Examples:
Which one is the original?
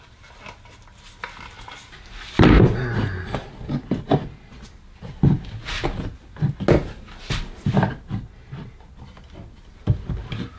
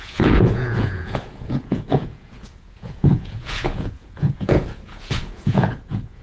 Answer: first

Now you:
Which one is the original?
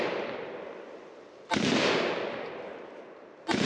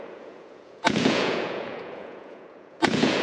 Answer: first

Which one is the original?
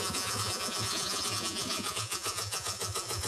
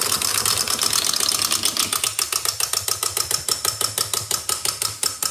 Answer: second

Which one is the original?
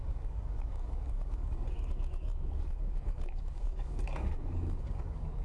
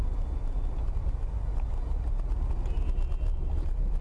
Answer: second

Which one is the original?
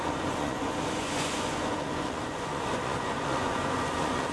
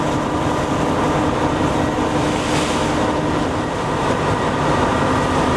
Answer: second